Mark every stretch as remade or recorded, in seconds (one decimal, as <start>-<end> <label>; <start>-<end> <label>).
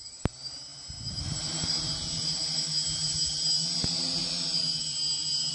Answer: 0.0-5.5 recorded